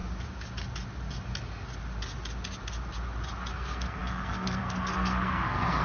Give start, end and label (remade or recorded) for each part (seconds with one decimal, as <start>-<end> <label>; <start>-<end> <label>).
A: 0.0-3.5 recorded; 3.5-5.8 remade